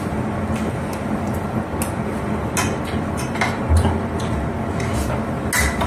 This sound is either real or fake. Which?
real